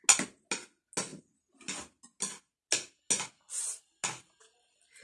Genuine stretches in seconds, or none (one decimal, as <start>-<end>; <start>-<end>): 0.0-5.0